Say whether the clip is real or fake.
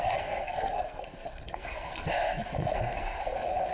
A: fake